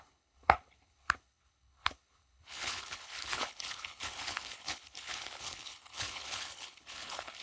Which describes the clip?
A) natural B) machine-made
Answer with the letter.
B